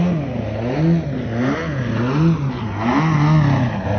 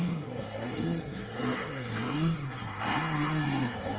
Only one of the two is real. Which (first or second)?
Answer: first